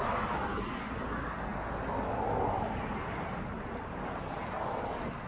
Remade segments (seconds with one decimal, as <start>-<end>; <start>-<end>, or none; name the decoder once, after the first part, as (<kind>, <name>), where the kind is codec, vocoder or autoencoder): none

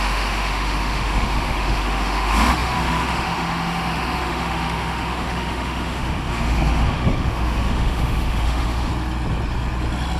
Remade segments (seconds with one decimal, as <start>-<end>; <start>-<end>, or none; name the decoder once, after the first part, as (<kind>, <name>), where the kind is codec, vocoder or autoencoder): 0.0-8.9 (autoencoder, DAC-VAE)